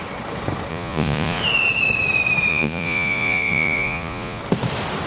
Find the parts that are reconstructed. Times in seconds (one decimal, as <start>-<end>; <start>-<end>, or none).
0.7-1.4; 2.5-4.4